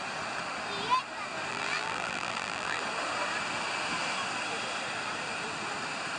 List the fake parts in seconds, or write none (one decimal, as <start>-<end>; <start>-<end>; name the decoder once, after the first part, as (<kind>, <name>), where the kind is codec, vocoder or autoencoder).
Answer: 1.5-2.8 (vocoder, BigVGAN v2)